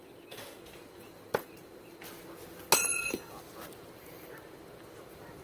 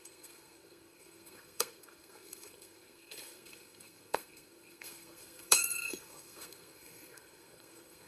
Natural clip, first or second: first